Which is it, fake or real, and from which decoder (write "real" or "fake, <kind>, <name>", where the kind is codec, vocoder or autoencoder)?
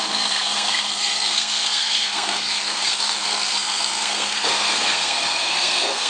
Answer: fake, codec, SNAC